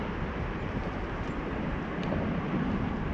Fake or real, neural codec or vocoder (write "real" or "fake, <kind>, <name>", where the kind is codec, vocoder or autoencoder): real